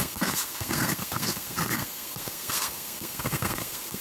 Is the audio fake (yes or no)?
yes